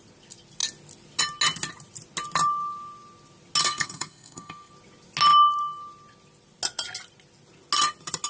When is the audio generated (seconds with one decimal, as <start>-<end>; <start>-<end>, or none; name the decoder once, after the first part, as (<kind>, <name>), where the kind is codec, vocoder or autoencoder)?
3.6-4.7 (codec, SNAC)